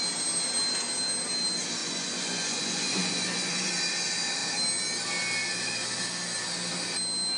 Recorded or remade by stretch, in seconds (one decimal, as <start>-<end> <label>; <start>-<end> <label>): 0.0-1.8 recorded; 1.8-3.7 remade; 3.7-7.4 recorded